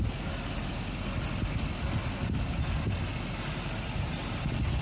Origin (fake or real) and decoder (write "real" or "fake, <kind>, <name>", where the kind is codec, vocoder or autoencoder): real